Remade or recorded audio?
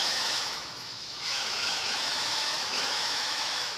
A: remade